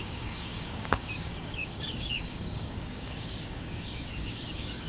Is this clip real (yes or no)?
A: no